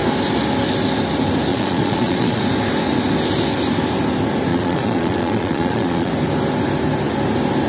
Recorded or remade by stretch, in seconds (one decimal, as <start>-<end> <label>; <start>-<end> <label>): 0.0-1.5 recorded; 1.5-2.4 remade; 2.4-4.5 recorded; 4.5-6.1 remade; 6.1-7.7 recorded